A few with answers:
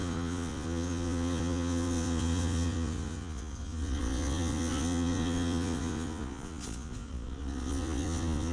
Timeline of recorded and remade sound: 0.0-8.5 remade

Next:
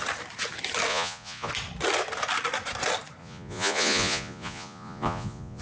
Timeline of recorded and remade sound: 0.0-0.9 recorded; 0.9-1.5 remade; 1.5-3.2 recorded; 3.2-5.6 remade

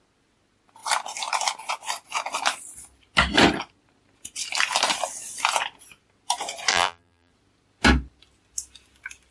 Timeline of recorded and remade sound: 0.0-6.7 recorded; 6.7-7.3 remade; 7.3-9.3 recorded

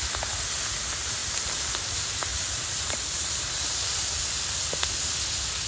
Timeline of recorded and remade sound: 0.0-2.3 recorded; 2.3-4.2 remade; 4.2-5.7 recorded